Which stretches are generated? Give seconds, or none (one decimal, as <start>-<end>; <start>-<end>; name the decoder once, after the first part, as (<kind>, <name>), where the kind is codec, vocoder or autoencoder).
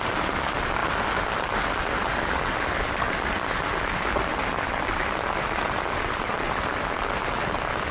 none